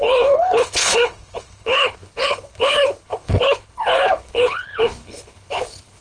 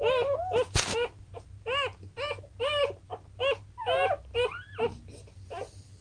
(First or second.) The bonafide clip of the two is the second